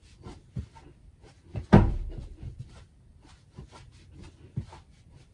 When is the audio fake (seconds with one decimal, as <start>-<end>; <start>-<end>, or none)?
0.0-5.3